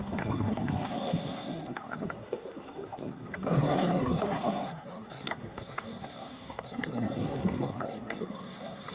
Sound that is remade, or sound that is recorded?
remade